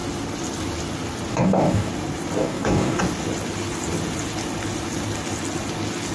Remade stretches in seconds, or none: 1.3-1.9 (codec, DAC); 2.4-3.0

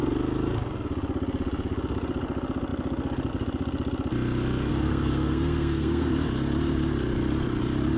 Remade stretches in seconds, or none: 4.7-6.1 (codec, SNAC)

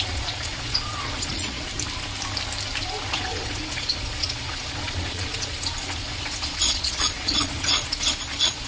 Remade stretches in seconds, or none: 0.0-1.7 (vocoder, Vocos); 3.1-8.7